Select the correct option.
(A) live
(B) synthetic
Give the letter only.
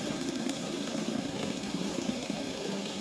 B